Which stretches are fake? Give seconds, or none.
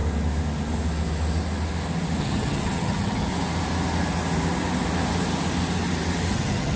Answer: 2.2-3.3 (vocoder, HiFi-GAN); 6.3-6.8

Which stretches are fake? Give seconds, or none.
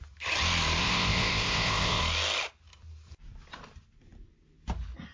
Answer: 0.8-2.0 (codec, ZipCodec)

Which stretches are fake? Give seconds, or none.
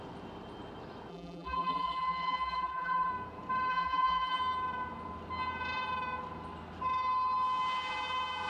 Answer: 1.1-3.1 (vocoder, BigVGAN v2); 3.7-4.4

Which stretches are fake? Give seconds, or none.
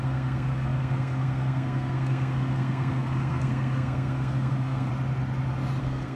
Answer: 0.0-4.9 (codec, SNAC); 5.8-6.2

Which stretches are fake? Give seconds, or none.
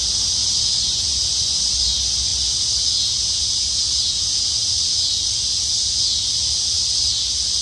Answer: 0.4-1.8 (vocoder, Vocos)